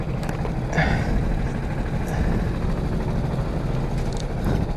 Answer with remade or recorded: recorded